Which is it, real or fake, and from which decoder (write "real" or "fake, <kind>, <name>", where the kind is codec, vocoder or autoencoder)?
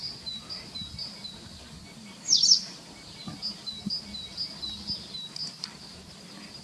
real